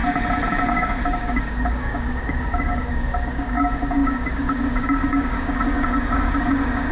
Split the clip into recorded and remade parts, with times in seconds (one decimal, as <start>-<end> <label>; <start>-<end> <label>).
0.0-0.7 recorded; 0.7-6.9 remade